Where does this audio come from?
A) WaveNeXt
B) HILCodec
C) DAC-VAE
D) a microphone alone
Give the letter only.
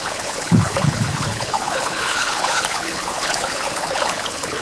B